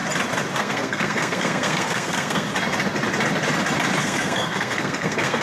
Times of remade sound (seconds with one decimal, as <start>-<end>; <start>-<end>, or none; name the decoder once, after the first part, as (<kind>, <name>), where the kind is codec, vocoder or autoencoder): 0.6-2.5 (codec, SNAC); 4.0-5.4